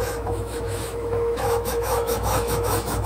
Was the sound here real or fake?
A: fake